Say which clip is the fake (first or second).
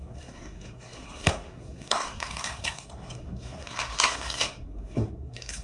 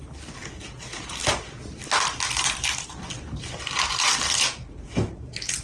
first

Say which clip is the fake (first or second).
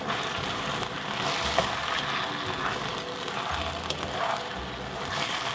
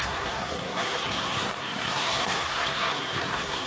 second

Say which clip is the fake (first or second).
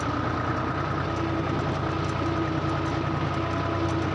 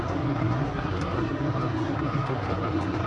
second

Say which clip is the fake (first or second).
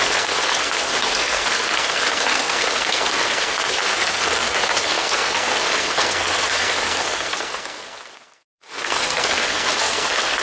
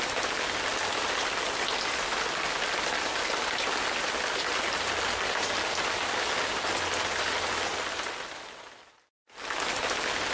first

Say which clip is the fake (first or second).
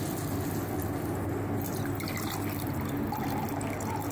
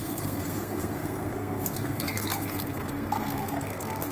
second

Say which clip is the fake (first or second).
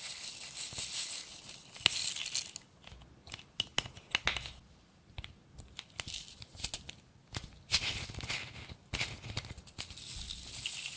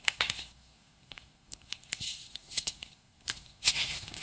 second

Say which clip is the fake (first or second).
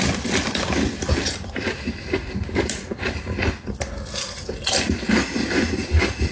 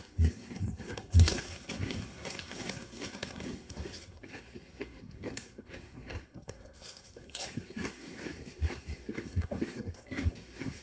second